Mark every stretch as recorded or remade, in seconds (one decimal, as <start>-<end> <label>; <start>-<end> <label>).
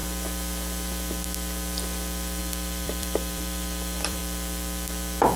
0.0-2.4 recorded; 2.4-4.2 remade; 4.2-5.4 recorded